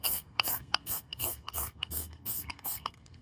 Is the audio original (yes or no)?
no